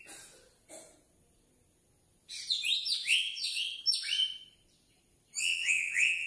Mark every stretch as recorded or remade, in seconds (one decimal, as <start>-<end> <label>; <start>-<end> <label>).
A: 0.0-3.1 recorded; 3.1-3.8 remade; 3.8-5.4 recorded; 5.4-6.3 remade